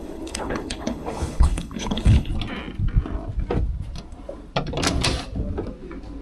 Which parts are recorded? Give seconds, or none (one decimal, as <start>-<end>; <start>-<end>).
2.3-6.2